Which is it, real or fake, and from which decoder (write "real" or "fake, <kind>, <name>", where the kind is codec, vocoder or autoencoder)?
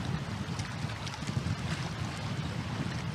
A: real